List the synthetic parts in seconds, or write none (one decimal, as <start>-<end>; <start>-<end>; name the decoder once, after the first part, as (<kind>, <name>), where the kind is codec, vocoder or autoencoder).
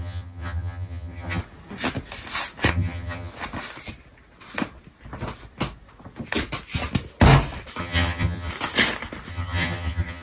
0.0-1.4 (vocoder, HiFi-GAN); 2.7-3.3; 7.8-8.5; 9.3-10.2